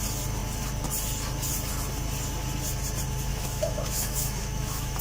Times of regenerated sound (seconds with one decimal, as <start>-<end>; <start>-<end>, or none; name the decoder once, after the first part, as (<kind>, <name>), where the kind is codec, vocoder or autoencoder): 3.3-5.0 (autoencoder, DAC-VAE)